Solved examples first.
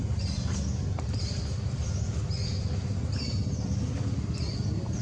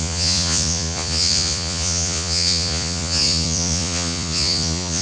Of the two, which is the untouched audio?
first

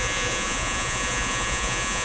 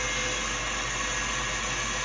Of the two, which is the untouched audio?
second